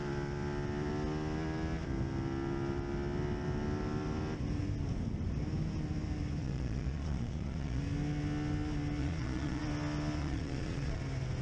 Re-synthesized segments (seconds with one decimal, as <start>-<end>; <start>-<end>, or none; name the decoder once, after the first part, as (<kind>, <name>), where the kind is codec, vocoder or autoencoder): 6.4-7.8 (vocoder, Vocos); 9.0-9.6; 10.2-11.0